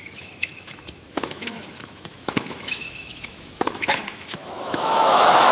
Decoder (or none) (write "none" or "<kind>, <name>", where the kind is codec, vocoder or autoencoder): autoencoder, DAC-VAE